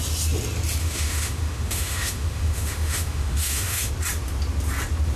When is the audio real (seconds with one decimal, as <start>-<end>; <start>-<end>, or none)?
0.0-0.8; 3.9-5.2